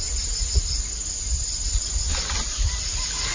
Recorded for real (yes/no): yes